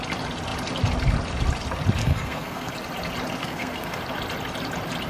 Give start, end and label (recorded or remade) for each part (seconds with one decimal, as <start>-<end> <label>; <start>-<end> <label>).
0.0-2.0 recorded; 2.0-2.7 remade; 2.7-3.4 recorded; 3.4-4.0 remade; 4.0-5.1 recorded

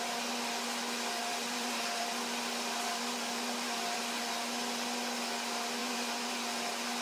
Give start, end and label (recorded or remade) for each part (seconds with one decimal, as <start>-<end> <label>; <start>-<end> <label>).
0.0-1.2 recorded; 1.2-4.0 remade; 4.0-5.8 recorded; 5.8-6.3 remade; 6.3-7.0 recorded

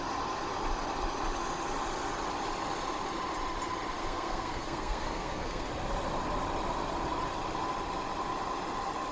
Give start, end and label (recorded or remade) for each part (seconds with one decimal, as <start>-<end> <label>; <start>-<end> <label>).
0.0-4.0 recorded; 4.0-5.7 remade; 5.7-9.1 recorded

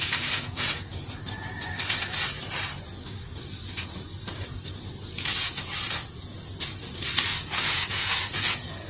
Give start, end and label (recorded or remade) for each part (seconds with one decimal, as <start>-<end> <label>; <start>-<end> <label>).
0.0-0.9 remade; 0.9-5.3 recorded; 5.3-5.7 remade; 5.7-7.3 recorded; 7.3-8.9 remade

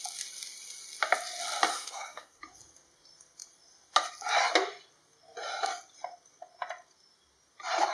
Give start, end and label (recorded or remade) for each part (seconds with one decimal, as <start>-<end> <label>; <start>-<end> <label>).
0.0-1.7 recorded; 1.7-2.4 remade; 2.4-7.9 recorded

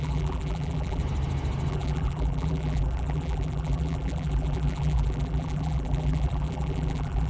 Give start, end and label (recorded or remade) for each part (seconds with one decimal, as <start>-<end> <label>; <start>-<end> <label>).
0.0-1.0 remade; 1.0-1.7 recorded; 1.7-7.3 remade

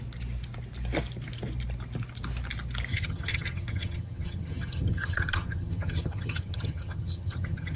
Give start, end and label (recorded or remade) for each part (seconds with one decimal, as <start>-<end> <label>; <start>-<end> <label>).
0.0-2.9 recorded; 2.9-7.8 remade

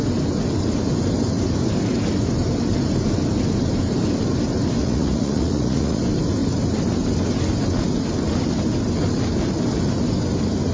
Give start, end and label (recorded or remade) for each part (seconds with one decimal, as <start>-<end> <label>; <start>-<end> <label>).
0.0-4.8 recorded; 4.8-6.0 remade; 6.0-10.7 recorded